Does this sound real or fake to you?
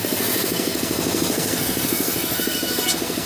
fake